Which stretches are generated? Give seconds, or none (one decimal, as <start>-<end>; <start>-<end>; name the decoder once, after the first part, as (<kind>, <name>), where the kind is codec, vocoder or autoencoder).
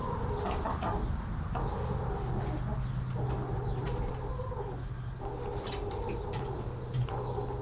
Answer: none